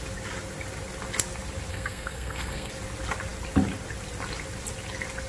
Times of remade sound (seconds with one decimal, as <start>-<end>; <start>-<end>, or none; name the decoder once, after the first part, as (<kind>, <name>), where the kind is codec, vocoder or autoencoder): 1.7-2.7 (codec, SNAC)

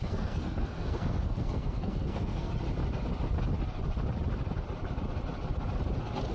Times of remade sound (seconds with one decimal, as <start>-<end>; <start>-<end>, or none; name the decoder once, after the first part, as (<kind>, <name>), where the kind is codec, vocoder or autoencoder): 0.0-2.5 (codec, SNAC)

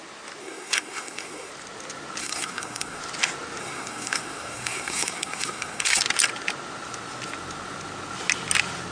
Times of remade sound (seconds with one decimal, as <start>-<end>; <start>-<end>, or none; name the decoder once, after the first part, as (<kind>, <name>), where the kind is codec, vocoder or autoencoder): 0.4-1.5 (codec, SNAC); 2.2-3.0; 3.6-6.0

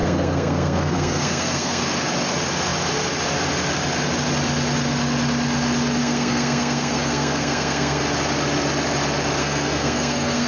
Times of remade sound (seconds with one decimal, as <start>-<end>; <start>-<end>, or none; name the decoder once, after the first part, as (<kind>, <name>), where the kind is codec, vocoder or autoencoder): 0.0-1.8 (codec, SNAC); 6.0-8.0; 9.4-10.5

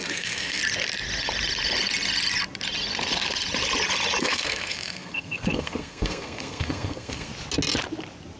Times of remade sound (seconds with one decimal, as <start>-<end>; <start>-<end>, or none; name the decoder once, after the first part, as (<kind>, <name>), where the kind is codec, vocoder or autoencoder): 0.0-0.6 (codec, SNAC); 4.2-7.3